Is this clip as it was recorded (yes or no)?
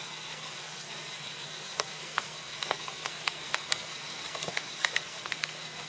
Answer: no